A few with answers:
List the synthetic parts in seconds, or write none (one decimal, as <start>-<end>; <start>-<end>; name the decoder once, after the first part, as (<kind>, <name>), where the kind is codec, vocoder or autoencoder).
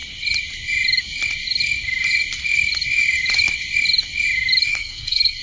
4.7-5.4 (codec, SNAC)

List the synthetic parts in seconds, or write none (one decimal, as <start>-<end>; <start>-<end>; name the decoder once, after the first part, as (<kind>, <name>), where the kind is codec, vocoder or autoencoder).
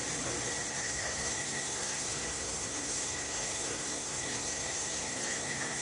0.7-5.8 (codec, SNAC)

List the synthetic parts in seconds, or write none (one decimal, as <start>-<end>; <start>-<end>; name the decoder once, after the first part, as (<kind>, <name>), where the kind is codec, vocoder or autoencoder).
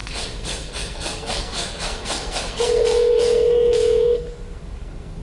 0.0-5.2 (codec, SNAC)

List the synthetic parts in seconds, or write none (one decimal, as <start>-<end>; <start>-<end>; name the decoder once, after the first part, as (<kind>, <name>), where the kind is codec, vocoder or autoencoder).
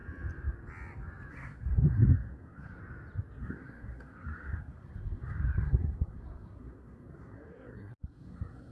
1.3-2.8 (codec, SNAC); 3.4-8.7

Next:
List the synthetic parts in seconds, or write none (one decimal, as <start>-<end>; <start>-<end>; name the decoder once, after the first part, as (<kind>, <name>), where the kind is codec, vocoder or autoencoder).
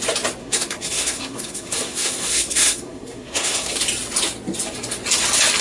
0.4-3.8 (codec, SNAC)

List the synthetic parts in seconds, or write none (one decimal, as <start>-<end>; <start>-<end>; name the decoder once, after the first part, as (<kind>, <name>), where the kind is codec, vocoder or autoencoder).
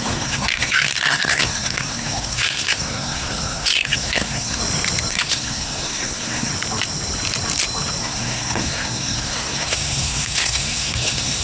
0.0-4.6 (codec, SNAC); 5.1-6.5; 8.0-11.4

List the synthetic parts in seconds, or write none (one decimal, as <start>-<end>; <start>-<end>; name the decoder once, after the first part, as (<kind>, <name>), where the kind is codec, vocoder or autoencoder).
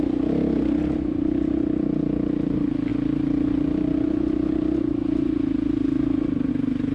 none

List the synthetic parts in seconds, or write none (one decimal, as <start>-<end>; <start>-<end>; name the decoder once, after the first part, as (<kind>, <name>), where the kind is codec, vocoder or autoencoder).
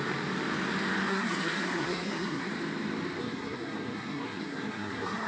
1.1-2.5 (codec, SNAC); 3.2-5.3